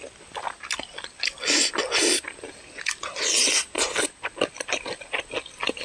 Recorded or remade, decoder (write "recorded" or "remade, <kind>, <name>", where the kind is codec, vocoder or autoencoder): recorded